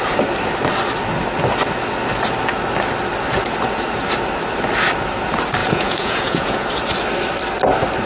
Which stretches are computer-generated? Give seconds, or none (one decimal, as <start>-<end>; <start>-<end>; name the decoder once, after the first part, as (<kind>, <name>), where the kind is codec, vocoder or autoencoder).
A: 5.6-6.7 (vocoder, Vocos)